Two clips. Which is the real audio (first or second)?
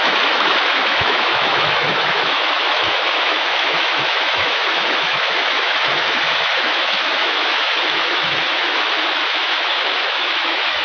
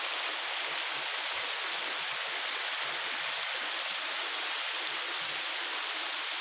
second